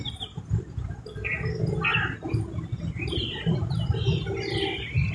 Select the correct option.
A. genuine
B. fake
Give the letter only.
A